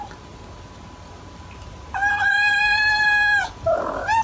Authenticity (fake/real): fake